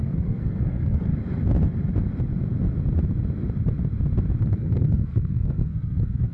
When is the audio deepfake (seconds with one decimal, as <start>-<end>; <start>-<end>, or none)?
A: 0.0-1.1; 4.4-6.3